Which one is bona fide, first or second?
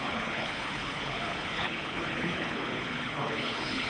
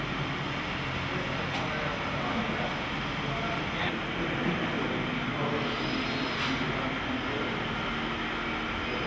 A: second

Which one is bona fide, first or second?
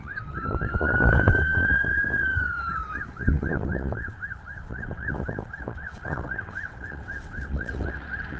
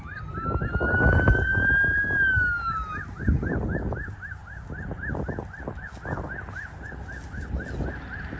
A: second